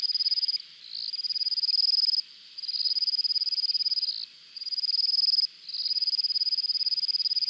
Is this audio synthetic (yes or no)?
no